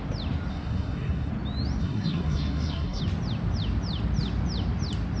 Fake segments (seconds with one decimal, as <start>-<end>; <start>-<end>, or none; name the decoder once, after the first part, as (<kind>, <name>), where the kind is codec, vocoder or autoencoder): 0.5-1.3 (codec, SNAC); 1.8-3.0

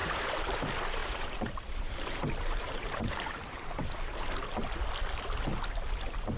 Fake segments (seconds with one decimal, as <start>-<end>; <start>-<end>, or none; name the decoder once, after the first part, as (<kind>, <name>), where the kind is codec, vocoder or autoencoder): 0.0-0.6 (vocoder, BigVGAN v2); 1.0-3.8

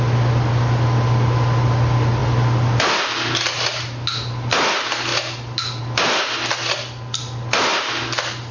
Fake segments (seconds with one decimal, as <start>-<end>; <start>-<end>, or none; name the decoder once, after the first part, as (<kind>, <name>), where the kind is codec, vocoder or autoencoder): none

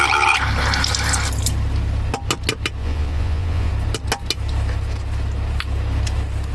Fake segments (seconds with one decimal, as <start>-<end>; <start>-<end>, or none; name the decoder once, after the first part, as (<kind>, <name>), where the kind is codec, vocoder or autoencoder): 2.8-3.7 (vocoder, Vocos)

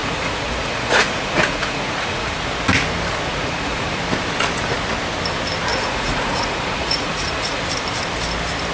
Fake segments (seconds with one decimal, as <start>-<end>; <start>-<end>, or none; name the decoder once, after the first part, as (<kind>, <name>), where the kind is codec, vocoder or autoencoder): 0.0-2.4 (vocoder, Vocos); 3.3-4.0; 5.7-7.6

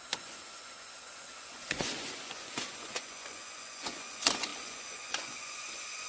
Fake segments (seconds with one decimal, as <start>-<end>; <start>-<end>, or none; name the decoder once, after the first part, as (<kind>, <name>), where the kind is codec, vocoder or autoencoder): 0.0-6.1 (vocoder, Vocos)

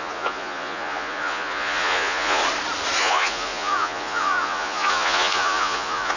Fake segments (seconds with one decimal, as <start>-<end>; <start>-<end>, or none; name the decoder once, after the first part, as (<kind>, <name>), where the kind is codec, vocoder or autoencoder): 0.0-2.4 (vocoder, Vocos); 3.0-6.2

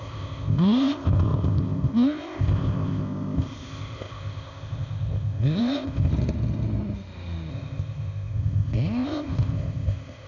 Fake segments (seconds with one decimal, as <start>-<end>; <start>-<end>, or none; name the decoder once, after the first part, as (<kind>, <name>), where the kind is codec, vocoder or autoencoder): 0.0-6.1 (codec, ZipCodec); 7.5-10.3